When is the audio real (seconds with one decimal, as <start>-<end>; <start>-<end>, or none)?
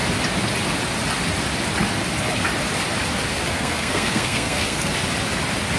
0.0-3.3; 4.9-5.8